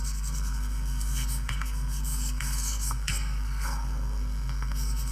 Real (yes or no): no